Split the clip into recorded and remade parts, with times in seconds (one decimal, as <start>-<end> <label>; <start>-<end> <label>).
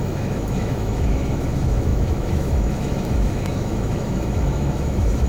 0.0-5.3 remade